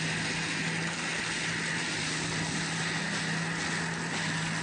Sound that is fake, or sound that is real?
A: real